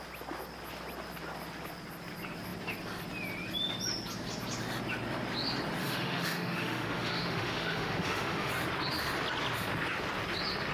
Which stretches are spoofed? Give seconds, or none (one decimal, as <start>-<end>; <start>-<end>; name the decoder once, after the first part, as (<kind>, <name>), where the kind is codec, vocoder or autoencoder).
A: 5.8-8.5 (autoencoder, DAC-VAE)